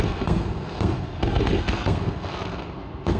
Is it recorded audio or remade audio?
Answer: remade